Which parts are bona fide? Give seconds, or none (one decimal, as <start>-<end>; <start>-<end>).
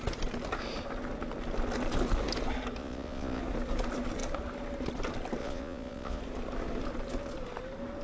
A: 0.0-2.8; 3.4-5.4; 6.2-8.0